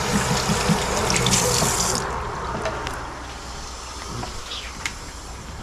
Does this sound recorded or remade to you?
recorded